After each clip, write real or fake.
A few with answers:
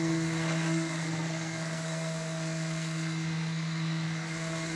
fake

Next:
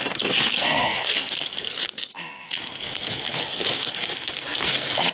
fake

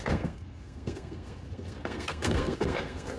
fake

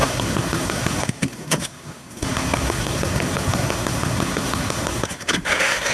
fake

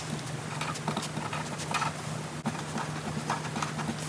real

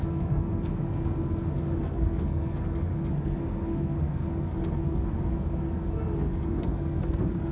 fake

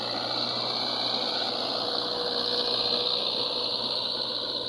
real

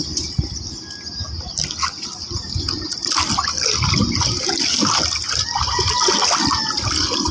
real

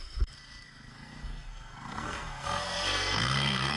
fake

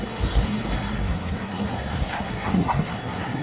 fake